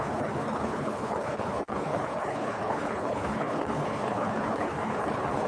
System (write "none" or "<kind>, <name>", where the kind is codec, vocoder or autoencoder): codec, HILCodec